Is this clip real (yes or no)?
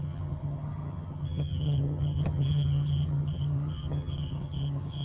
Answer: no